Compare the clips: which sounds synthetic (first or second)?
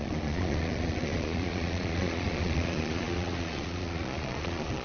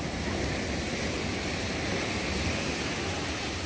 first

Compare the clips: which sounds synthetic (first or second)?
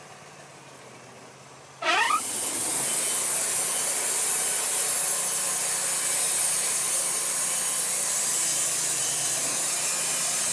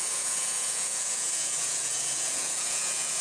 second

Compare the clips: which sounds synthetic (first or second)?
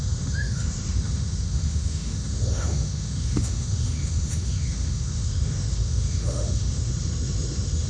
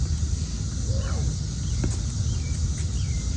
first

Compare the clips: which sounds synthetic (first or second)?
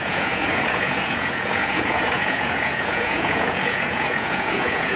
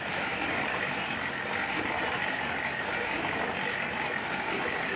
first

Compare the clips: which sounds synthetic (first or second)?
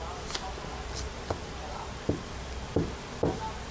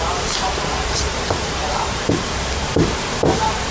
second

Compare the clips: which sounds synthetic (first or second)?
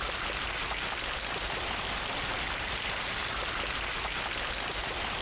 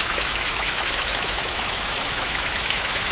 second